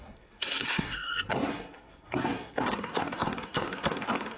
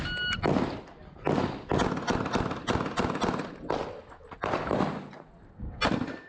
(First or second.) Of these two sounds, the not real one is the first